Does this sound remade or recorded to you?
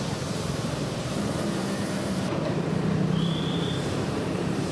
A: remade